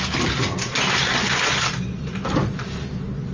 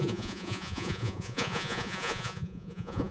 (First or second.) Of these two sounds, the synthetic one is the second